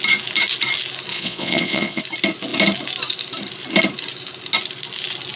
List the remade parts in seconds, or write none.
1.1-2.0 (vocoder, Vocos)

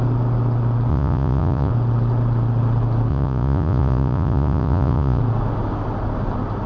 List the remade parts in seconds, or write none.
0.9-1.7 (vocoder, Vocos); 3.1-5.2

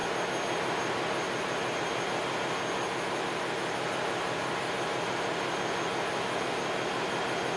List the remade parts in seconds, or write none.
none